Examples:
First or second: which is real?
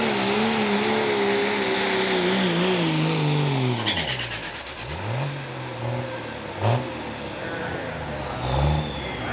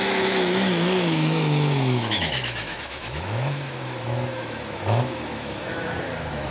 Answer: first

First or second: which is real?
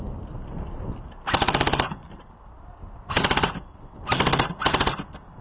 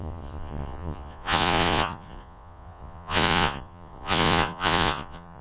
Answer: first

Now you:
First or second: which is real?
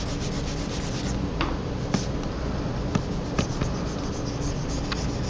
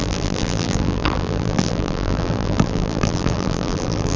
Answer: first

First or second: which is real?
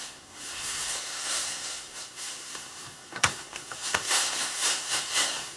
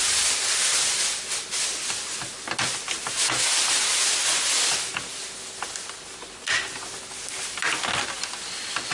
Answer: second